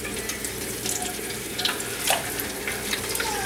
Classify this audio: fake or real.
fake